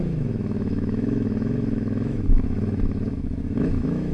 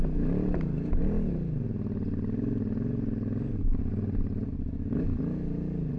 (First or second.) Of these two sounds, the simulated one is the first